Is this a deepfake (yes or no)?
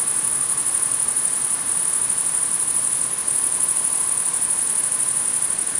no